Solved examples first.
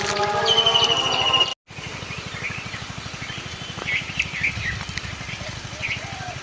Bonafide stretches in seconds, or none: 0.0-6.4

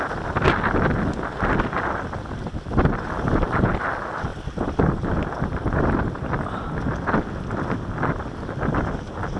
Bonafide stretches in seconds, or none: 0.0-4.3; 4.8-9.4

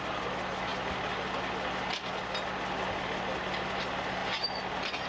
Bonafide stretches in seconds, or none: 0.0-5.1

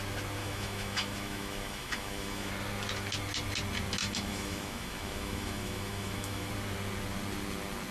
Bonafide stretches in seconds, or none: 0.0-0.4; 2.5-4.0; 6.5-7.9

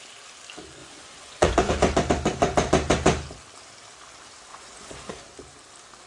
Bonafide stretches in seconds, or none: 0.0-0.8; 1.7-4.5; 5.1-6.1